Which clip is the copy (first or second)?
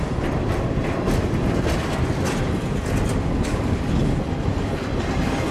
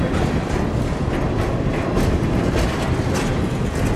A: first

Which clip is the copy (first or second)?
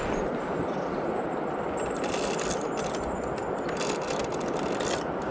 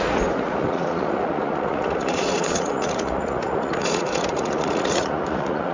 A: second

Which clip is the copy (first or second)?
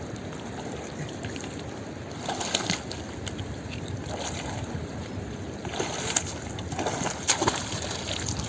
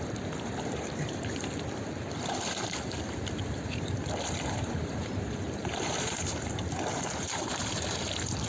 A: second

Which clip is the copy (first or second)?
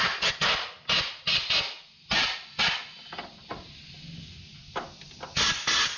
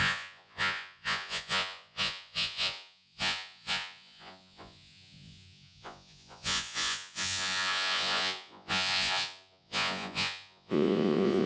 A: second